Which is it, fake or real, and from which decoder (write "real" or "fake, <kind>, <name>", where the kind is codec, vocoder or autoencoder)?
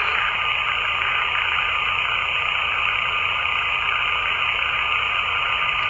real